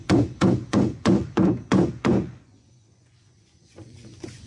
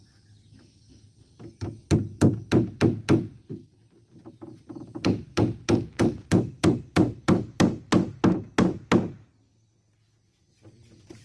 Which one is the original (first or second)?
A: second